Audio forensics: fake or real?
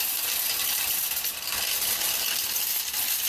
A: real